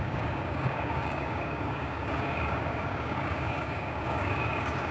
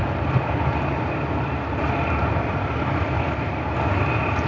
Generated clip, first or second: first